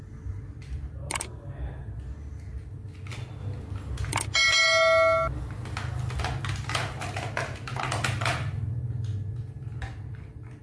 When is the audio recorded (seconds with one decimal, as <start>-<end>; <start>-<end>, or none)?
0.0-10.6